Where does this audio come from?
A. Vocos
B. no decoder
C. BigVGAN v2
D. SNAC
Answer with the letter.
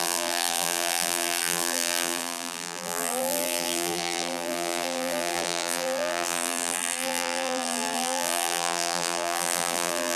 C